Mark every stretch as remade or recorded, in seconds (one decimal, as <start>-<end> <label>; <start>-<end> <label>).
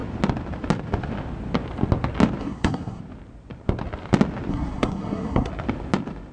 0.0-2.4 recorded; 2.4-3.0 remade; 3.0-4.5 recorded; 4.5-5.5 remade; 5.5-6.3 recorded